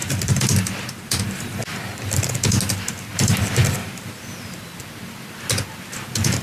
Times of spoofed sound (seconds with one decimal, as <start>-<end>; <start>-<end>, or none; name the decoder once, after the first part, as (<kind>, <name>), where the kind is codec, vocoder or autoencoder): 0.0-1.6 (vocoder, BigVGAN v2); 3.1-4.8